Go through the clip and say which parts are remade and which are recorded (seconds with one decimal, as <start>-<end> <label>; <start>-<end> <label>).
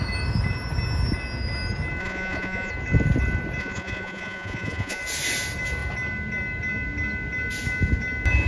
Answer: 0.0-2.0 recorded; 2.0-2.7 remade; 2.7-3.6 recorded; 3.6-5.0 remade; 5.0-8.5 recorded